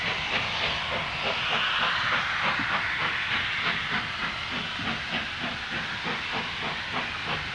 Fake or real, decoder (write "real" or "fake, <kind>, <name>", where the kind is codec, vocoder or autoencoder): real